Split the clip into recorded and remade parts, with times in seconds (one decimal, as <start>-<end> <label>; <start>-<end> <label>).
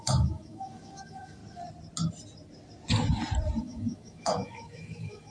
0.0-1.4 remade; 1.4-3.6 recorded; 3.6-5.3 remade